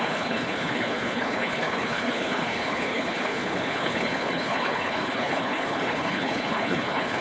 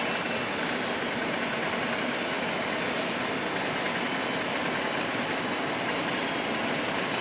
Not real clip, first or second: first